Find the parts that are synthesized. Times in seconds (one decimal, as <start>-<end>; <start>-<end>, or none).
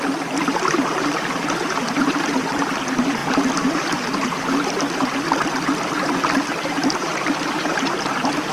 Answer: 7.0-8.5